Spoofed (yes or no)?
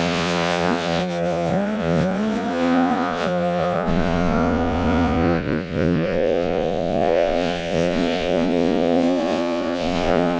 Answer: yes